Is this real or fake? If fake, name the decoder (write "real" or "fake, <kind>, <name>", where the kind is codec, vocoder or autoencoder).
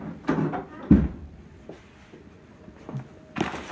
fake, vocoder, BigVGAN v2